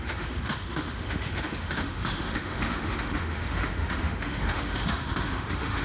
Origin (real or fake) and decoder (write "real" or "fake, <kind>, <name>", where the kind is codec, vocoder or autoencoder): fake, autoencoder, DAC-VAE